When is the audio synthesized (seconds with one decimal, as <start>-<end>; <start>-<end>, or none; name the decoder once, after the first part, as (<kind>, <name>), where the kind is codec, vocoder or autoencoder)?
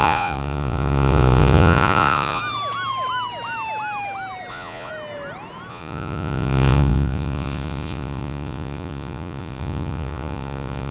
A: 0.0-2.4 (vocoder, Vocos); 4.5-4.9; 5.7-10.9